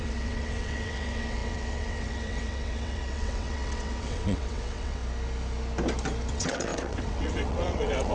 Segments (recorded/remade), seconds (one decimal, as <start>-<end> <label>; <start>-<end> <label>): 0.0-5.0 remade; 5.0-6.3 recorded; 6.3-8.1 remade